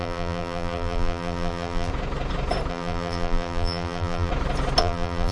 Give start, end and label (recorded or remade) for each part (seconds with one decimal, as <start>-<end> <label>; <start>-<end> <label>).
0.0-1.9 remade; 1.9-2.7 recorded; 2.7-4.3 remade; 4.3-4.8 recorded; 4.8-5.3 remade